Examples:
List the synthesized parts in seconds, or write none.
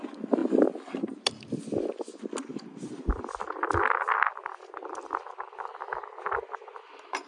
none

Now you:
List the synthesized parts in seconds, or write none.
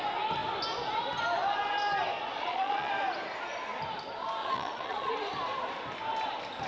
2.4-2.9 (vocoder, Vocos); 4.4-5.1